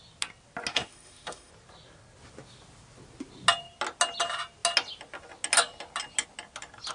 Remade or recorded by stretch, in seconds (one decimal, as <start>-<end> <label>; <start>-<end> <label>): 0.0-0.7 recorded; 0.7-1.5 remade; 1.5-6.9 recorded